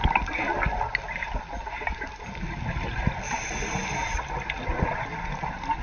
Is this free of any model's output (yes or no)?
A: yes